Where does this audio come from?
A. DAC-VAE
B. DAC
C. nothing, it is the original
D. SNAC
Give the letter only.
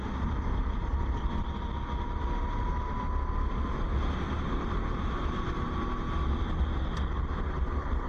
C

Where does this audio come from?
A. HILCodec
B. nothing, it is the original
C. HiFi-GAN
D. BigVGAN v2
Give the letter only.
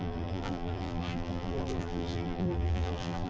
D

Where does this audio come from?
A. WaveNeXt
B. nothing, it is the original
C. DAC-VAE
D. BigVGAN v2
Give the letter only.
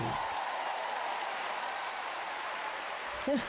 D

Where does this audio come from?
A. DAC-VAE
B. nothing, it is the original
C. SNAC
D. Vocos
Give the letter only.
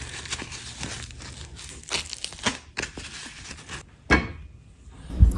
B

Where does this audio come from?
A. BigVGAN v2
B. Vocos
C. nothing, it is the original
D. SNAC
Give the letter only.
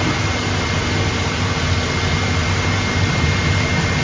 C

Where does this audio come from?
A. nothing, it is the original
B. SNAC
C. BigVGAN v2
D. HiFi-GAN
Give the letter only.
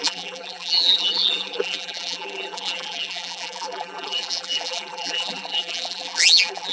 C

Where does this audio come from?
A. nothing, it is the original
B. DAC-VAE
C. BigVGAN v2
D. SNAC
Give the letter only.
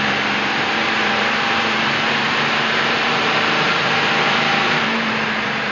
C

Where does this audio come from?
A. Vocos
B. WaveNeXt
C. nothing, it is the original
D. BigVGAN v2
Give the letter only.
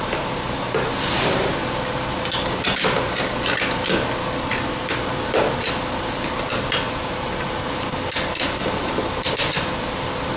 C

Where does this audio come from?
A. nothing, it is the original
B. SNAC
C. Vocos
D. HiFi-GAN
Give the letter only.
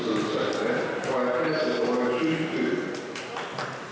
A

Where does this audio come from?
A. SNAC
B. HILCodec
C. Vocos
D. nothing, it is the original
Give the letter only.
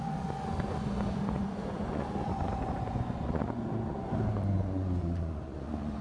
C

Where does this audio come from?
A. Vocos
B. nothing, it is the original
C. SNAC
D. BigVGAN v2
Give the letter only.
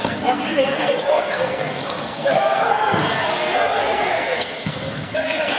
C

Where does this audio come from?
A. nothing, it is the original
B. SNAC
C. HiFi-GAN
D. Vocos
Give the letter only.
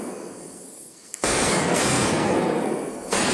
B